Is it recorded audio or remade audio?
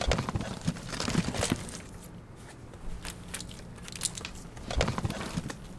recorded